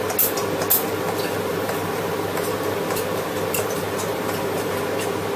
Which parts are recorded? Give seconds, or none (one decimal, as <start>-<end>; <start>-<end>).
0.0-1.5; 4.7-5.4